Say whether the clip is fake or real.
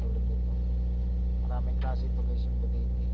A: real